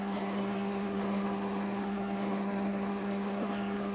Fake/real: fake